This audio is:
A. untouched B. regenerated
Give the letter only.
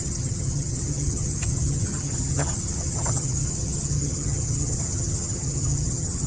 B